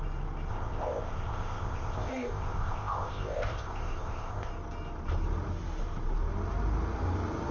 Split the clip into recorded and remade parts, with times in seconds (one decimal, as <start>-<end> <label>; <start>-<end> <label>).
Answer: 0.0-0.5 recorded; 0.5-4.5 remade; 4.5-7.5 recorded